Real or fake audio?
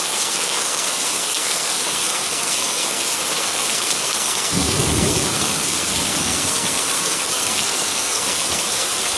fake